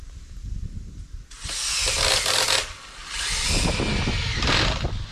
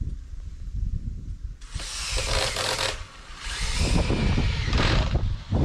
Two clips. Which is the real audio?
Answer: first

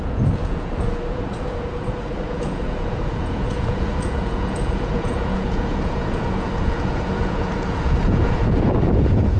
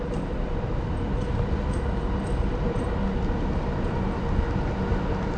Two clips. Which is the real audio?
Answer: second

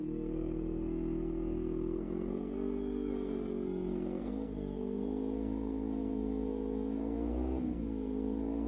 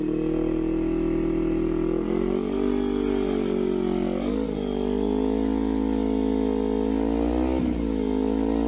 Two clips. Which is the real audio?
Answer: second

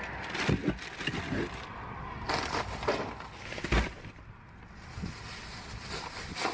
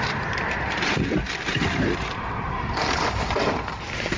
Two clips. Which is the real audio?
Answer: first